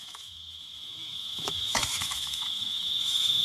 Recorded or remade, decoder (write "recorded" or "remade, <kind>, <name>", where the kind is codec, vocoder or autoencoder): remade, autoencoder, DAC-VAE